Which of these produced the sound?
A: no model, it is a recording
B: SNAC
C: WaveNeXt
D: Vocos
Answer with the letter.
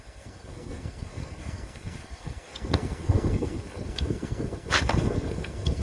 B